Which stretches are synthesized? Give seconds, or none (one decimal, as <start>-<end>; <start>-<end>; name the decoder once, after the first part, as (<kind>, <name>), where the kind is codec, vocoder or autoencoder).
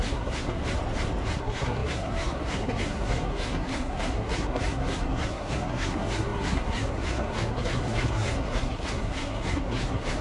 0.0-0.6 (codec, SNAC); 1.4-10.2